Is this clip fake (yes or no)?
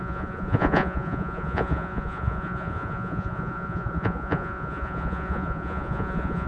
yes